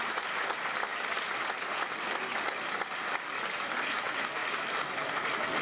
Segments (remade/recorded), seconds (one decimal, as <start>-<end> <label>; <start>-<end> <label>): 0.0-5.6 recorded